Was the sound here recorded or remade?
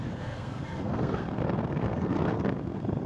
remade